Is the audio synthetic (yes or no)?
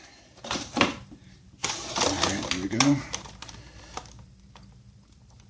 yes